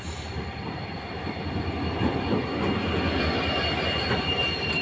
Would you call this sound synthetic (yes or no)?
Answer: yes